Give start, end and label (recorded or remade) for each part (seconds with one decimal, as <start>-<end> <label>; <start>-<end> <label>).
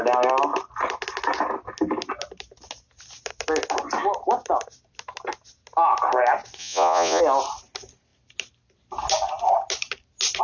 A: 0.0-6.6 recorded; 6.6-7.2 remade; 7.2-10.4 recorded